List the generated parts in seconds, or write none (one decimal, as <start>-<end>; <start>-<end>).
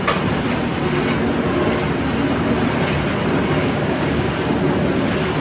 3.6-4.3